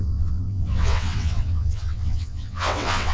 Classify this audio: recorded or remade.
remade